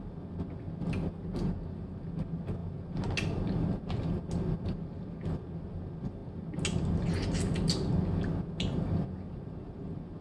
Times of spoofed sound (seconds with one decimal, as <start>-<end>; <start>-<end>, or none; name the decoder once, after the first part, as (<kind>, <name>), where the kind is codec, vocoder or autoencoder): none